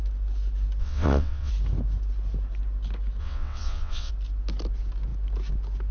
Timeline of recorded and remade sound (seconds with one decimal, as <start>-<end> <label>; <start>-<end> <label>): 0.0-0.8 recorded; 0.8-1.5 remade; 1.5-3.2 recorded; 3.2-4.1 remade; 4.1-5.9 recorded